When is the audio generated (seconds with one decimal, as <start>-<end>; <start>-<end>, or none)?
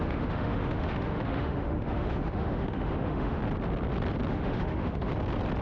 0.0-3.4; 4.3-5.1